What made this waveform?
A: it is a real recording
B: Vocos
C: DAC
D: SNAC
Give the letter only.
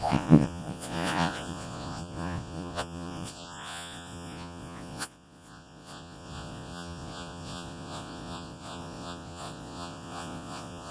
B